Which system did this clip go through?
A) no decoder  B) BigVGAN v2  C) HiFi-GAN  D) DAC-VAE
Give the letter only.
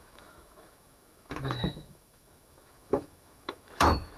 D